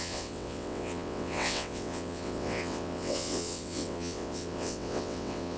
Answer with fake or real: fake